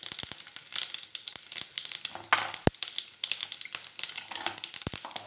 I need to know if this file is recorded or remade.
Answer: recorded